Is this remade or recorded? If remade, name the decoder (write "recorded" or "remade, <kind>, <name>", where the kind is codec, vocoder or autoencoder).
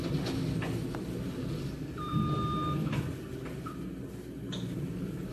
recorded